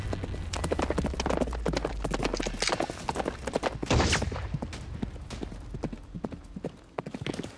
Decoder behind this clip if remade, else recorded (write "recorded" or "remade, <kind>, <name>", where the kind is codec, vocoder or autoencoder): recorded